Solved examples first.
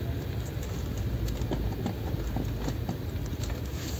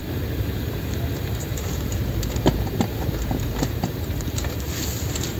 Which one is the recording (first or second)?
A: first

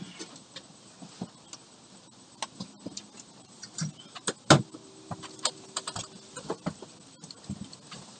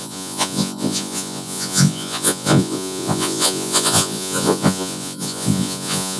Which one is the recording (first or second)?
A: first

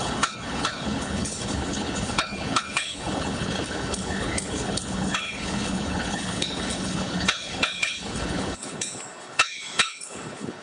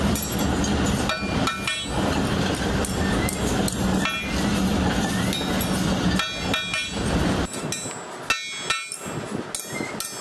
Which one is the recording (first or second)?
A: second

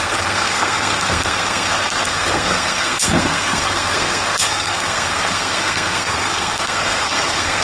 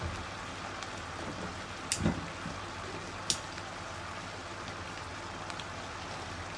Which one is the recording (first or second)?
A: second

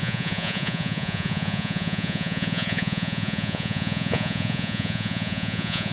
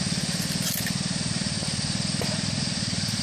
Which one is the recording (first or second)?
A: second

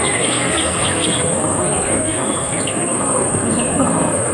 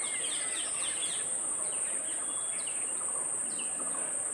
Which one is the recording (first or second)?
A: second